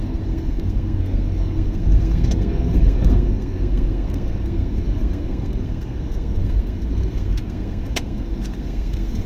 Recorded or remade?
remade